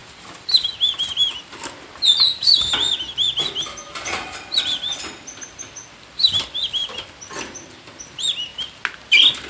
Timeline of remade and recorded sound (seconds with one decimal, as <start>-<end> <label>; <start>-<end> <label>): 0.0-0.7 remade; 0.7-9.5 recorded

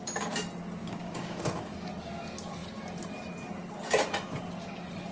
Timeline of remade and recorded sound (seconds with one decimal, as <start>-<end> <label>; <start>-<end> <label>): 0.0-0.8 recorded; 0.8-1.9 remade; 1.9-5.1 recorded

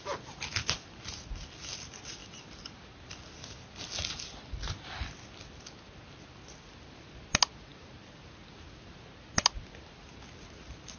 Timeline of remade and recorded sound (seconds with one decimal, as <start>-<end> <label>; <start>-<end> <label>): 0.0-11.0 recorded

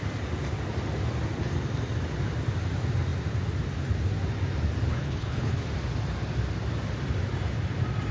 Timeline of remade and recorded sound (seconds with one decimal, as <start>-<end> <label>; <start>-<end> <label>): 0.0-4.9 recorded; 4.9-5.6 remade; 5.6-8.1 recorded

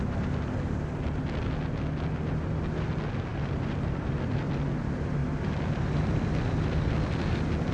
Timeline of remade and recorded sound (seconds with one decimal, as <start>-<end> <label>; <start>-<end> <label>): 0.0-3.3 recorded; 3.3-4.5 remade; 4.5-5.2 recorded; 5.2-6.9 remade; 6.9-7.7 recorded